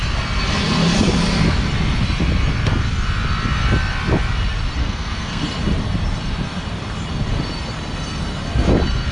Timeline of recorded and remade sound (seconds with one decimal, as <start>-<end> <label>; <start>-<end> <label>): 0.0-4.8 recorded; 4.8-5.4 remade; 5.4-9.1 recorded